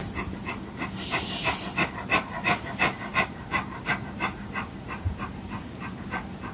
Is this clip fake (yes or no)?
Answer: yes